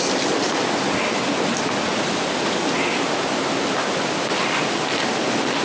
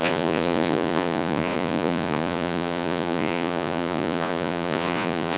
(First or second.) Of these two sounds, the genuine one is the first